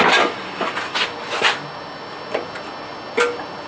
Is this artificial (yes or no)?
no